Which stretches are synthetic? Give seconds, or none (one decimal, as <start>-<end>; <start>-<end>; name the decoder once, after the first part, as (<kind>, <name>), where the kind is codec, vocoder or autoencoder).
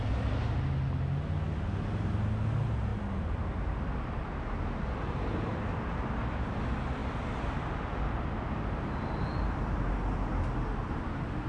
none